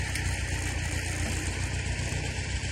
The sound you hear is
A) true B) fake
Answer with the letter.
A